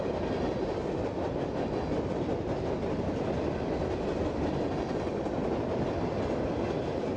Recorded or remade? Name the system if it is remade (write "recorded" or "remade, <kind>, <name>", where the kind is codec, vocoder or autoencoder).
recorded